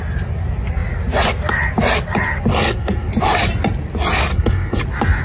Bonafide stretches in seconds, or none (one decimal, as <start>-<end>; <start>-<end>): 0.0-2.5; 3.1-4.3; 4.8-5.2